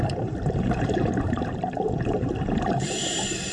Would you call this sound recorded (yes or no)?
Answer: no